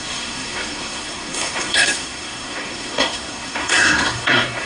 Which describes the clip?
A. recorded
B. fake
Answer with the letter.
B